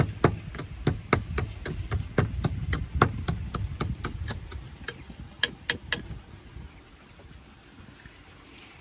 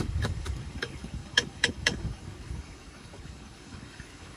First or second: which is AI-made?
second